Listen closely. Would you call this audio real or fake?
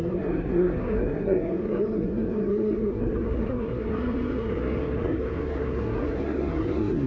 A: fake